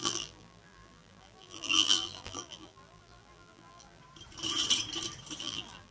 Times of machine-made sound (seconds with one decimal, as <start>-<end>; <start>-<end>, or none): 0.0-4.0; 5.4-5.9